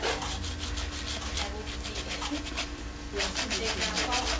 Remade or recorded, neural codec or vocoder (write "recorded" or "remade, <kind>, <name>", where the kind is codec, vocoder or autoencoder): recorded